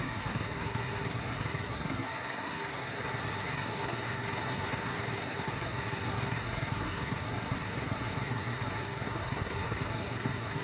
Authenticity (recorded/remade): remade